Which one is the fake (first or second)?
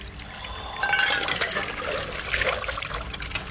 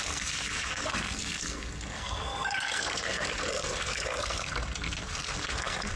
second